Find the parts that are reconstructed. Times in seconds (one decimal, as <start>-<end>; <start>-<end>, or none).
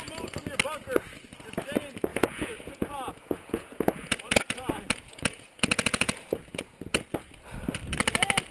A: 2.1-7.0